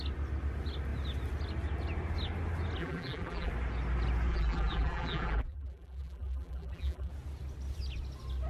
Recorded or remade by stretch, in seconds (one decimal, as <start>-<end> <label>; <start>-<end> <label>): 0.0-2.8 recorded; 2.8-3.5 remade; 3.5-4.3 recorded; 4.3-7.1 remade; 7.1-8.5 recorded